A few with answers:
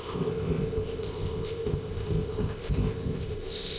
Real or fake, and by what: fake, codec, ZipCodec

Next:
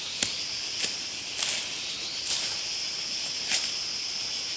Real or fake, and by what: real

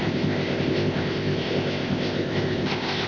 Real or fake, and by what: fake, codec, ZipCodec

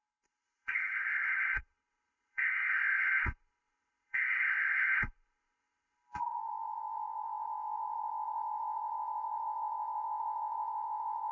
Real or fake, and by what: fake, codec, ZipCodec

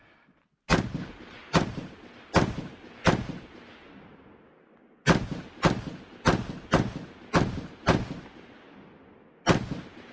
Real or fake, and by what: real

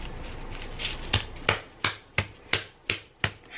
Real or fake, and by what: real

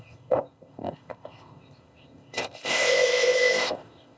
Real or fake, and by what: fake, codec, ZipCodec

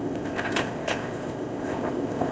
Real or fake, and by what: fake, codec, ZipCodec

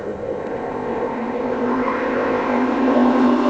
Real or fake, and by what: fake, codec, ZipCodec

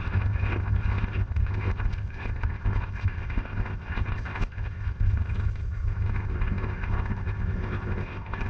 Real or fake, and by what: fake, codec, ZipCodec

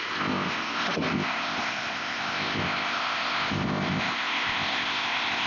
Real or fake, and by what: fake, codec, ZipCodec